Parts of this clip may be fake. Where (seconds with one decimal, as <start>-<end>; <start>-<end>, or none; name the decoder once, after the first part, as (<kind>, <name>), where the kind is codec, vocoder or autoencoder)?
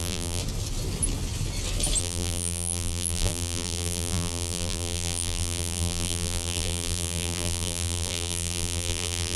0.0-0.4 (vocoder, BigVGAN v2); 2.0-9.4